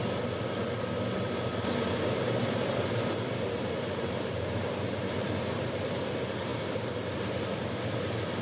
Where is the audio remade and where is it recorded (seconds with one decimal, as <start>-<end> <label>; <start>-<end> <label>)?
0.0-2.4 recorded; 2.4-8.4 remade